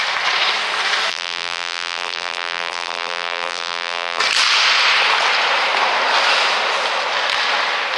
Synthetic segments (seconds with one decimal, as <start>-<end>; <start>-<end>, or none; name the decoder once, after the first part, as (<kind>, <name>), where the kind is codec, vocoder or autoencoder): 1.1-4.2 (vocoder, BigVGAN v2)